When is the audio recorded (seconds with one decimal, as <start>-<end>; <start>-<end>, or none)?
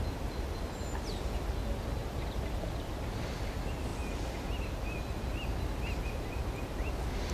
0.0-2.0; 3.2-7.3